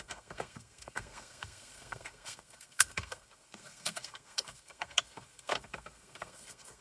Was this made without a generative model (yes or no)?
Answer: no